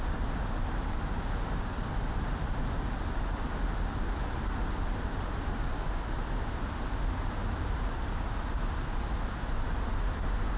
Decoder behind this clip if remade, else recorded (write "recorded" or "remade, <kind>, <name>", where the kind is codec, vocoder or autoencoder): recorded